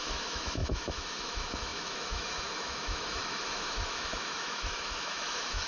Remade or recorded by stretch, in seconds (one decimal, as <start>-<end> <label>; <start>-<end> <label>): 0.0-5.7 remade